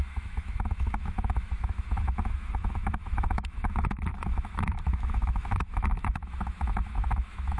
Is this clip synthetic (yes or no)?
yes